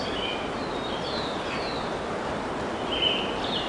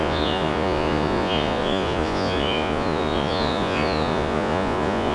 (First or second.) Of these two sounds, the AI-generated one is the second